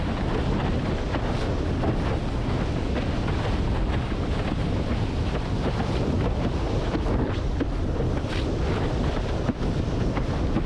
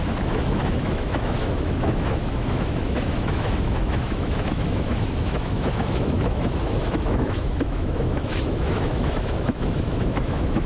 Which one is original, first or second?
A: first